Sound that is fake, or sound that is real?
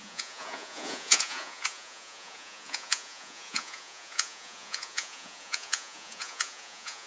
fake